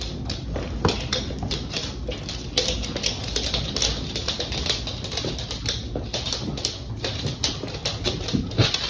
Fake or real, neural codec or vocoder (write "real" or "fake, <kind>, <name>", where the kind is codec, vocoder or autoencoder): real